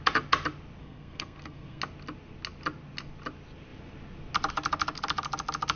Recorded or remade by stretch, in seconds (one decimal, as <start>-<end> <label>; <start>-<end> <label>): 0.0-0.8 recorded; 0.8-1.8 remade; 1.8-5.8 recorded